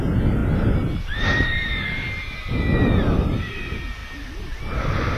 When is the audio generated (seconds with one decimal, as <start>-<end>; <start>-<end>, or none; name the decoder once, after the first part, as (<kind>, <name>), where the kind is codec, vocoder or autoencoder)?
none